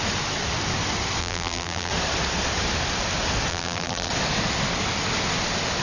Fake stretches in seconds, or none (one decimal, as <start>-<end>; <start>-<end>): 1.2-1.9; 3.5-4.1